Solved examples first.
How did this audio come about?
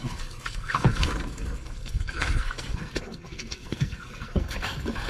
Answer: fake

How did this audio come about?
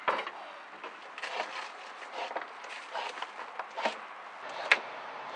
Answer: real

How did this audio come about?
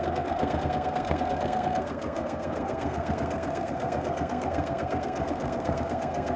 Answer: fake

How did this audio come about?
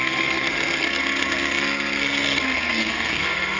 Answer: fake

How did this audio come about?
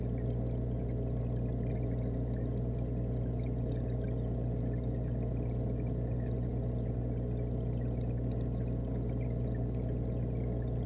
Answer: real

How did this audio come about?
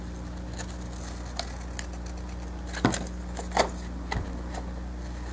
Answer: real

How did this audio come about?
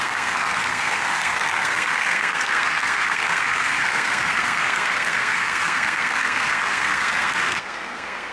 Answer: fake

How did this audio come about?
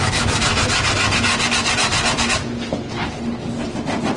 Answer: real